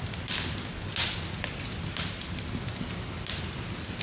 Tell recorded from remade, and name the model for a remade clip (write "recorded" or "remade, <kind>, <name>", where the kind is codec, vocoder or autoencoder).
recorded